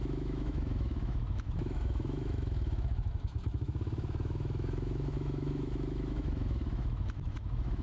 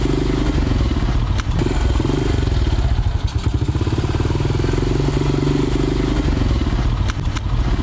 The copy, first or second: first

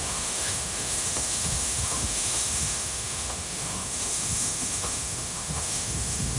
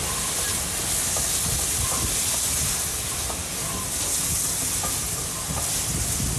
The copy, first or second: first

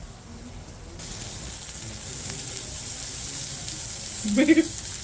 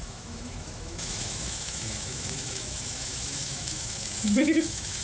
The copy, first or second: second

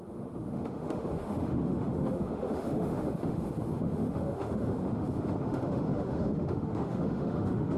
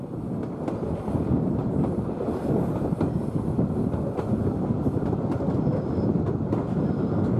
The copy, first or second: first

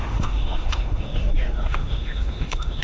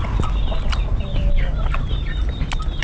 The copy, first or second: first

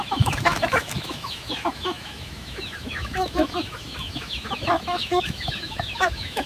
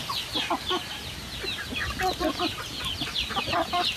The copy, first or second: first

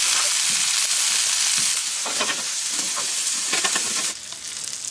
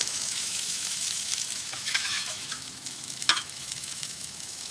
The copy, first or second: second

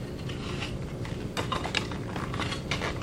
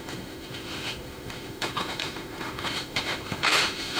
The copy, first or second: second